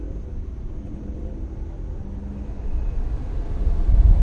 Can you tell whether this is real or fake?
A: real